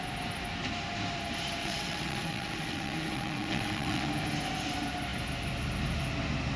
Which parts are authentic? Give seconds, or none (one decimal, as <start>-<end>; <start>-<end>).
0.0-1.6; 4.1-6.6